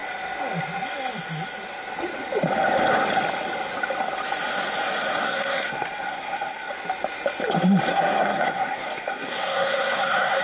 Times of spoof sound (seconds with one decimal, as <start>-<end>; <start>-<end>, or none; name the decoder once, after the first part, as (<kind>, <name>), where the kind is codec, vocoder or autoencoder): 5.2-6.7 (codec, SNAC); 7.9-10.4